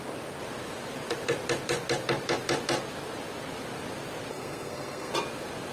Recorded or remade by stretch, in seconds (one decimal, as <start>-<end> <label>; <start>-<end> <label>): 0.0-4.3 recorded; 4.3-5.1 remade; 5.1-5.7 recorded